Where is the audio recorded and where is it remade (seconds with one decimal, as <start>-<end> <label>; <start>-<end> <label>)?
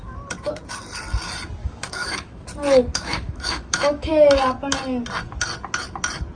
0.0-1.6 recorded; 1.6-2.4 remade; 2.4-2.9 recorded; 2.9-4.1 remade; 4.1-6.4 recorded